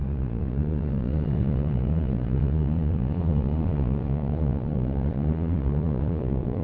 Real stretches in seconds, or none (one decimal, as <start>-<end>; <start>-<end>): none